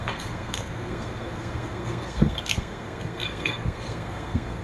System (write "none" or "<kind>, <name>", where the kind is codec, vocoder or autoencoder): codec, SNAC